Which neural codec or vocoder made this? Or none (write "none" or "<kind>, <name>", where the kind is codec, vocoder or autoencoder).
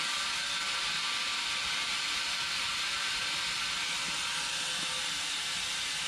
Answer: none